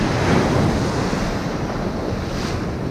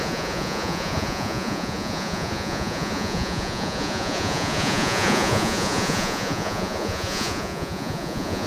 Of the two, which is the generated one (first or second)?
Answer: second